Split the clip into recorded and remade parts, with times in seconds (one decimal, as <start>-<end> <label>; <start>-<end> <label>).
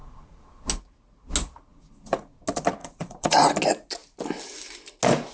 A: 0.0-0.7 remade; 0.7-1.7 recorded; 1.7-2.4 remade; 2.4-2.8 recorded; 2.8-3.5 remade; 3.5-5.3 recorded